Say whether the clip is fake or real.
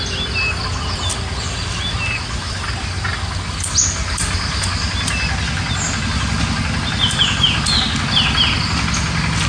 real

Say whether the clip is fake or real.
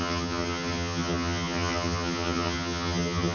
fake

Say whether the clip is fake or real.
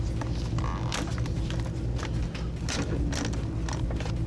real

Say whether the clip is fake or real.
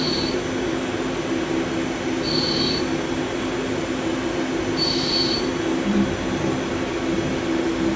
real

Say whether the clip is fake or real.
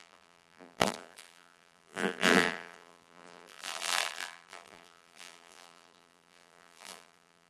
fake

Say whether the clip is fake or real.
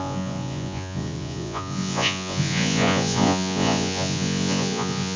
fake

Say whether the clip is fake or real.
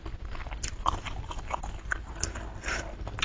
real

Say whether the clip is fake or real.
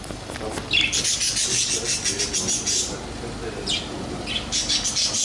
real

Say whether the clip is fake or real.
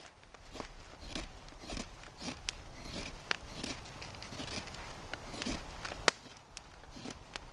real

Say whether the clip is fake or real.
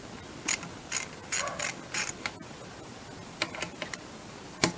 real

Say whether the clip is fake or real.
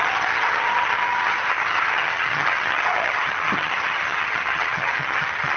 fake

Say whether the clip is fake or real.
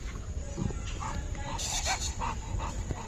fake